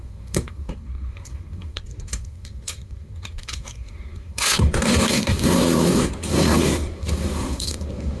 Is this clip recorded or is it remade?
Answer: remade